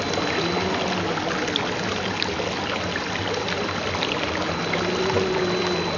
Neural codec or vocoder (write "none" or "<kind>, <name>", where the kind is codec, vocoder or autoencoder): none